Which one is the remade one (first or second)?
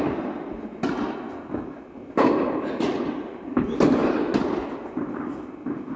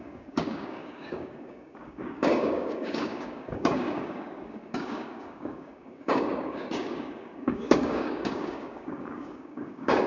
second